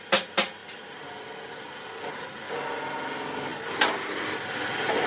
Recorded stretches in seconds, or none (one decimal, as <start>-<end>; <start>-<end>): 0.0-5.1